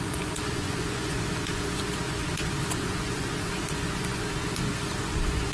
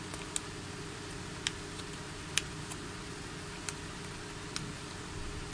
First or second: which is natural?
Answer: second